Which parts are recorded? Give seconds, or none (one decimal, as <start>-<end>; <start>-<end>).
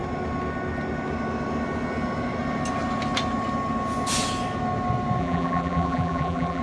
0.0-5.2